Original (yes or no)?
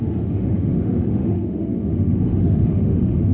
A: no